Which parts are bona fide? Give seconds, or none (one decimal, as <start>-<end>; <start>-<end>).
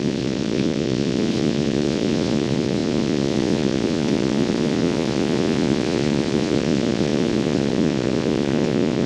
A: none